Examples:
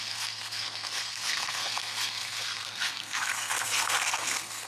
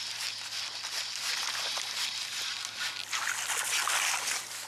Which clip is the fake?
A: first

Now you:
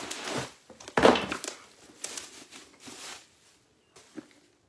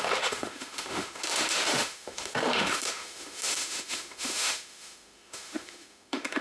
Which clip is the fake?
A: second